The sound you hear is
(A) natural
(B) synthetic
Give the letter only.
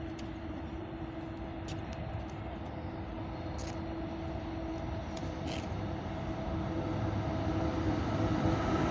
A